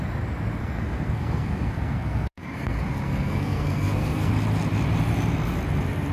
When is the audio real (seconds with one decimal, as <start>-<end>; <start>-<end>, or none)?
0.0-0.6; 4.3-6.1

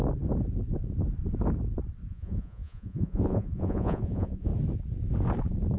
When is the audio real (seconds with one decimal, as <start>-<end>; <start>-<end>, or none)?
0.0-2.1; 4.5-5.8

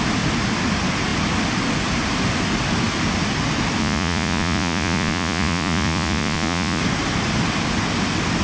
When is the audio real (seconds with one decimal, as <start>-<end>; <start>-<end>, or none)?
0.0-3.8; 6.8-8.4

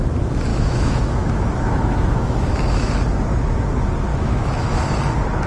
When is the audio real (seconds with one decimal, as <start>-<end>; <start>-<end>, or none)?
0.0-0.5; 2.9-4.1; 5.0-5.5

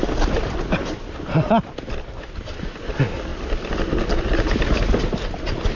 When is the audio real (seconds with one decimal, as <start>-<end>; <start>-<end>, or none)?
0.0-3.3; 5.0-5.8

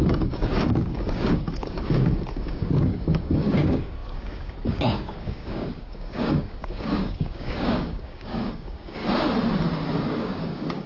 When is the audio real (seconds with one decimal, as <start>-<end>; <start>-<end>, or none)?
9.0-10.1

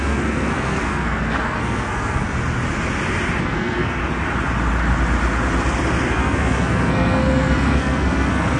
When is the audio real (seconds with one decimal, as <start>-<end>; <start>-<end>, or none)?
2.4-3.4; 4.0-6.1

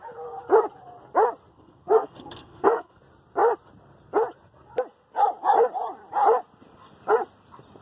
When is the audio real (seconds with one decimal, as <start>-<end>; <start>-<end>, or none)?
0.0-1.5; 3.0-7.8